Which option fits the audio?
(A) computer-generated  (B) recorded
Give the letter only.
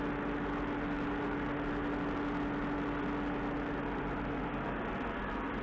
B